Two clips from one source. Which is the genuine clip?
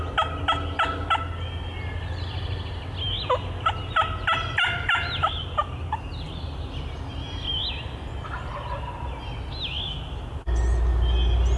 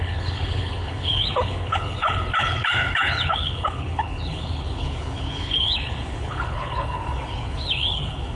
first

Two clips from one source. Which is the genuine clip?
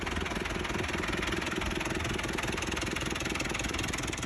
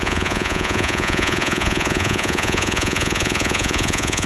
first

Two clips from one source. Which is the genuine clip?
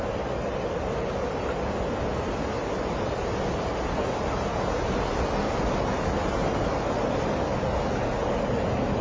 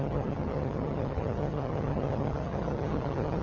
first